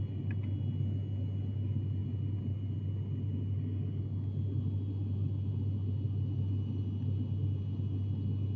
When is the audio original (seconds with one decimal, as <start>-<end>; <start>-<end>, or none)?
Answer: 0.0-8.6